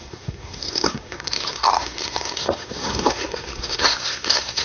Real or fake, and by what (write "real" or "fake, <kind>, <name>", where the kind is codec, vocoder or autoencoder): fake, codec, SNAC